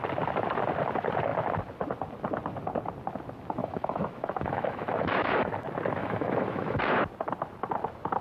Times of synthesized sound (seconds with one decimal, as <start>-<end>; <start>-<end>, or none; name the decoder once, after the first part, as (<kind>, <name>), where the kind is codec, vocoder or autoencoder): 3.6-5.5 (autoencoder, DAC-VAE); 6.0-6.9

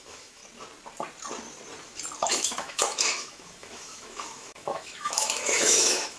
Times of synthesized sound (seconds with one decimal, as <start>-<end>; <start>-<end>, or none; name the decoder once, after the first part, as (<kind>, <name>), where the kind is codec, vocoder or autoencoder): 0.0-0.4 (autoencoder, DAC-VAE); 2.3-6.2

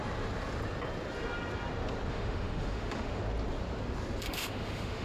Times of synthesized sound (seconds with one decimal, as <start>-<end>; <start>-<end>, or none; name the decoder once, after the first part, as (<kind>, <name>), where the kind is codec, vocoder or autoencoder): 2.1-3.2 (autoencoder, DAC-VAE); 4.2-5.0

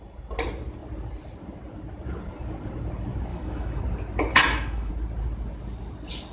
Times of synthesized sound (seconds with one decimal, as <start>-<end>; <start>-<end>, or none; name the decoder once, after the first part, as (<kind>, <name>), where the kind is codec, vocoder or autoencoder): 3.3-3.8 (autoencoder, DAC-VAE); 4.3-4.9